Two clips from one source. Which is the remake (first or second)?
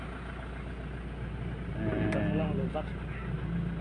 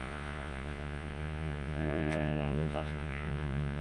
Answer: second